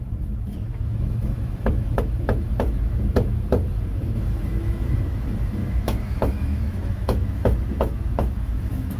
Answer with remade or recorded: remade